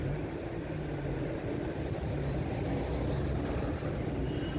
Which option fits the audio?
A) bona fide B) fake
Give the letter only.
A